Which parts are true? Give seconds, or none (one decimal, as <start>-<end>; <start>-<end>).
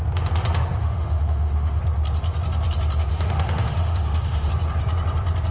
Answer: 0.0-0.8; 1.8-3.1; 4.5-5.5